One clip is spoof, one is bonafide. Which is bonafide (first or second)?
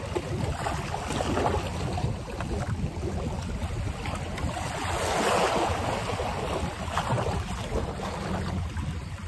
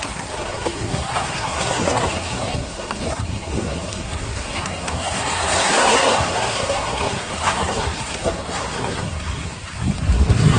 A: first